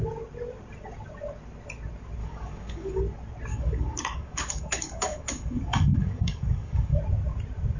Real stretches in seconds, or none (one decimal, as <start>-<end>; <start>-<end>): 0.0-2.2; 3.0-3.5; 7.0-7.8

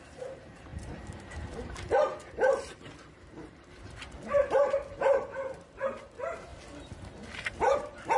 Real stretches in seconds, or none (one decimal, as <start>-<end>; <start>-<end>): 6.5-7.6

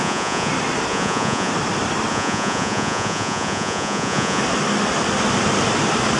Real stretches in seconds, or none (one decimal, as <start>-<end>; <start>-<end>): 0.5-0.9; 1.5-2.1; 4.4-6.2

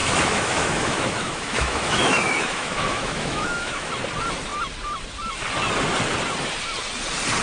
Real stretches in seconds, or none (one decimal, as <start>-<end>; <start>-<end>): 3.9-7.4